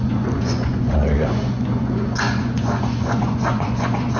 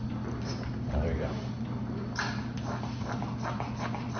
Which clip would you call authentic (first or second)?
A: second